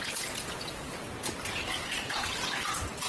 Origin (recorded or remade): recorded